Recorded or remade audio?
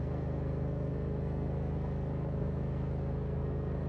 remade